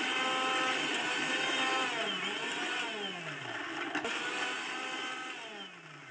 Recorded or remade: recorded